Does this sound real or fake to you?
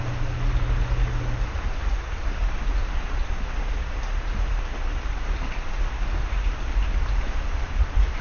real